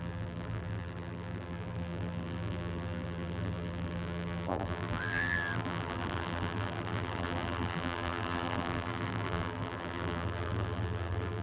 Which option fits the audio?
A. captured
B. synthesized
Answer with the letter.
B